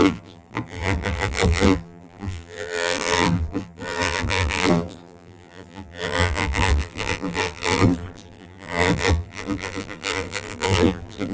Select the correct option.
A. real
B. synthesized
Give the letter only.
B